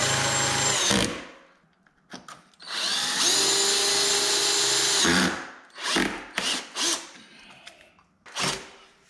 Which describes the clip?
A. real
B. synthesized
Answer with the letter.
A